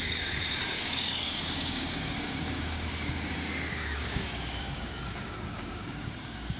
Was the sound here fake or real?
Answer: fake